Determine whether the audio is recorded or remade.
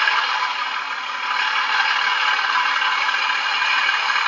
recorded